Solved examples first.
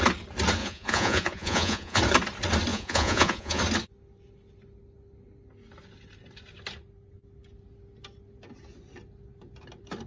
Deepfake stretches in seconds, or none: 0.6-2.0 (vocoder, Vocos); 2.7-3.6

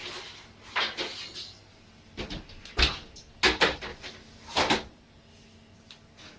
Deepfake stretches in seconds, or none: none